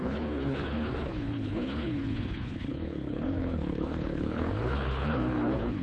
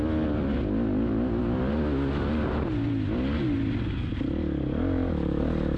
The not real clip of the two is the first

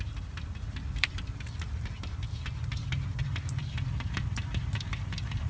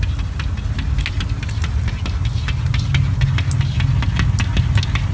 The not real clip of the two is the first